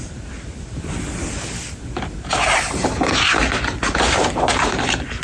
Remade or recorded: recorded